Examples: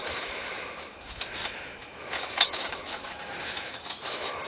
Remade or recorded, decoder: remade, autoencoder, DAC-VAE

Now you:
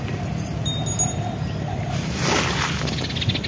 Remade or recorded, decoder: recorded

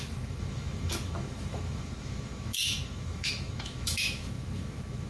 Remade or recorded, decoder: remade, autoencoder, DAC-VAE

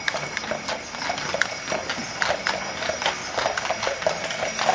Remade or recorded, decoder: recorded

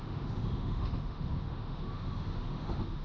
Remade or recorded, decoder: remade, autoencoder, DAC-VAE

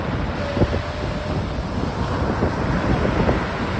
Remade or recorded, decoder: recorded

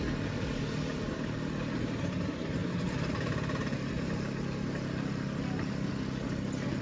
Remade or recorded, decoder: recorded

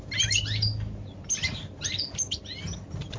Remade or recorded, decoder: recorded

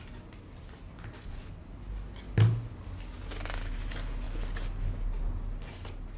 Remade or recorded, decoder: recorded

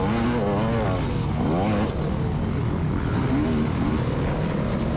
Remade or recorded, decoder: recorded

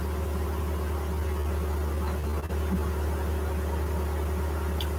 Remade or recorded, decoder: recorded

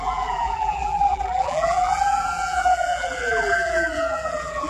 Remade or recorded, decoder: remade, vocoder, BigVGAN v2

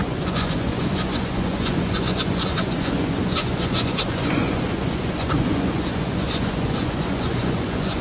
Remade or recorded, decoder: remade, vocoder, Vocos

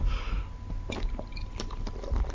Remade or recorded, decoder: recorded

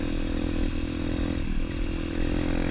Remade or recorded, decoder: recorded